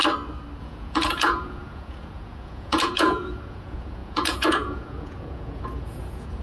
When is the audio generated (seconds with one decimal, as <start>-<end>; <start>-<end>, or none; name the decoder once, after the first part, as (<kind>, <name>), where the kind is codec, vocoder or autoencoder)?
0.6-6.4 (vocoder, Vocos)